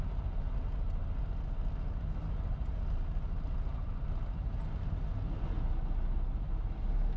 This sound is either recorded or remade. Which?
recorded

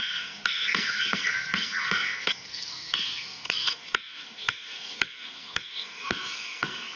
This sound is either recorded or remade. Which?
remade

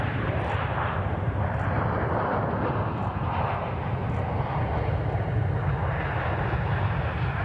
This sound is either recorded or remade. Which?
recorded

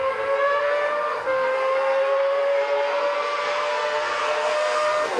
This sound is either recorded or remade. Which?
remade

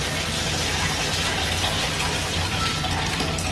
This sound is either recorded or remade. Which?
recorded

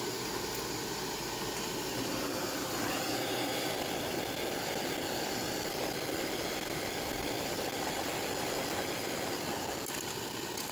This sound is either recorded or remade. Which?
recorded